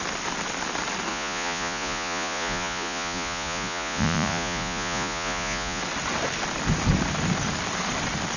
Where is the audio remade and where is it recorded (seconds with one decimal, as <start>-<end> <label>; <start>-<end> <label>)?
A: 0.0-1.1 recorded; 1.1-5.8 remade; 5.8-8.4 recorded